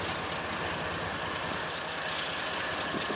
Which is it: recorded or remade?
recorded